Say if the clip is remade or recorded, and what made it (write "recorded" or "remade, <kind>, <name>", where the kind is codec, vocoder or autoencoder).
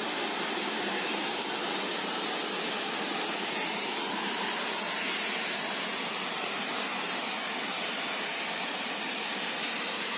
recorded